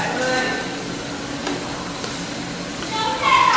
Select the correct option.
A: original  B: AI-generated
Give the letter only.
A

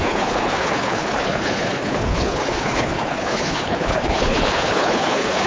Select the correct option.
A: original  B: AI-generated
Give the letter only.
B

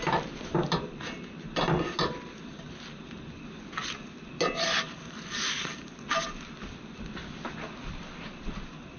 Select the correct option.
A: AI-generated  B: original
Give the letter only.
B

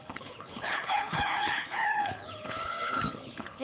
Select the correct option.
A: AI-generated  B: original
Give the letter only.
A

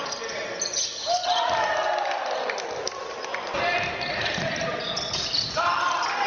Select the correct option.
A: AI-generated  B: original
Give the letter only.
B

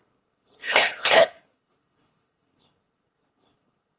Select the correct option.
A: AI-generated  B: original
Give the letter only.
A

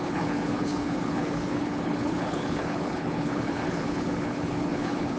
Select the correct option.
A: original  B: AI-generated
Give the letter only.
B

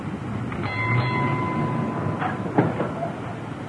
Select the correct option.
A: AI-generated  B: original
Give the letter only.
B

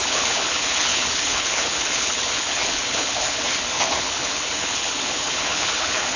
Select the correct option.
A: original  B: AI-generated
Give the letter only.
B